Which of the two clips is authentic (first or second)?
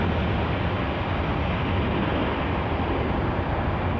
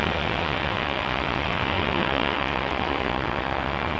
first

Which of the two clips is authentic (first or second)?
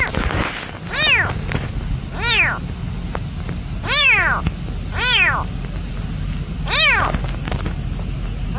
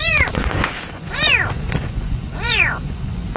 first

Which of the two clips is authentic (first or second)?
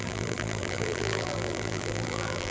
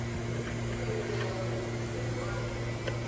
second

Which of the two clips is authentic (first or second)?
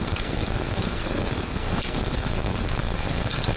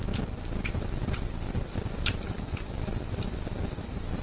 second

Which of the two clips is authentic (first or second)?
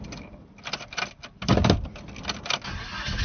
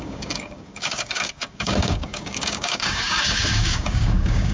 first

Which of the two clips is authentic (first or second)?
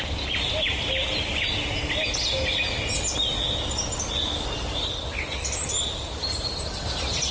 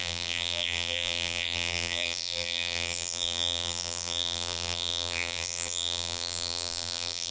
first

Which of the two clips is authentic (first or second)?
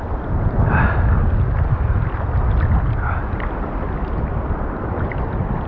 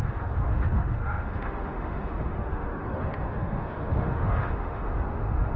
first